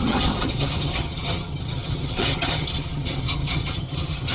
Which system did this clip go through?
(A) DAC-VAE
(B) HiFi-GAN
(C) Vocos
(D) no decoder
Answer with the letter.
B